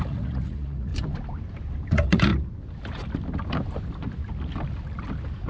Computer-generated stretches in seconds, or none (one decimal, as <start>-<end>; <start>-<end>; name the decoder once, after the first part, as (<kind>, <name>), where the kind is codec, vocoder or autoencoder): 0.0-0.9 (vocoder, Vocos); 1.9-2.3